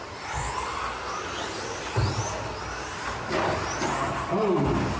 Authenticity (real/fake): real